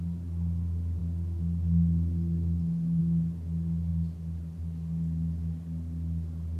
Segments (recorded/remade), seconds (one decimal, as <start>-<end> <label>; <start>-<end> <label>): 0.0-6.6 recorded